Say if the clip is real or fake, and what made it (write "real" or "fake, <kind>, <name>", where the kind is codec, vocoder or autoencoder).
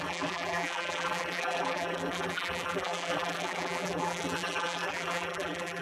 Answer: fake, vocoder, BigVGAN v2